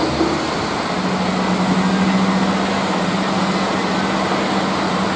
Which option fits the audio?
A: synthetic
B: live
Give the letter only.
B